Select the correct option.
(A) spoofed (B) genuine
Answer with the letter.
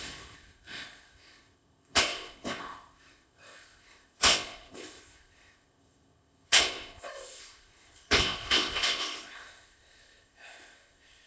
A